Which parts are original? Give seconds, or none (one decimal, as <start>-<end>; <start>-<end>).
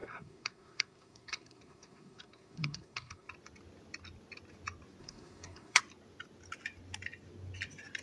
3.3-5.0; 5.8-8.0